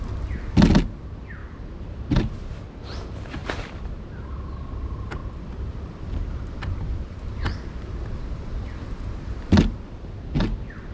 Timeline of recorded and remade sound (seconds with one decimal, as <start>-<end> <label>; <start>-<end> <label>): 0.0-1.4 recorded; 1.4-2.3 remade; 2.3-3.4 recorded; 3.4-3.9 remade; 3.9-5.2 recorded; 5.2-8.8 remade; 8.8-10.9 recorded